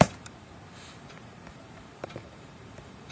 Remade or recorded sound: remade